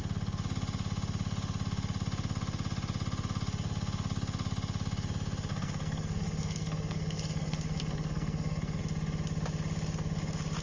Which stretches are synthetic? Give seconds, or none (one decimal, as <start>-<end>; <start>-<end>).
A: 5.5-8.8